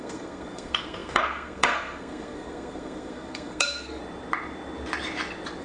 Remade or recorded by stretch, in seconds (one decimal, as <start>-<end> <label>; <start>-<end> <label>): 0.0-4.0 remade; 4.0-5.6 recorded